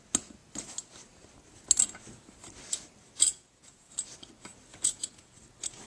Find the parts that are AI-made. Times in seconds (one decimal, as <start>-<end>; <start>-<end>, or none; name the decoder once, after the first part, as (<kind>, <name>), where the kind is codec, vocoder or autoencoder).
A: 3.3-3.9 (vocoder, Vocos); 4.7-5.4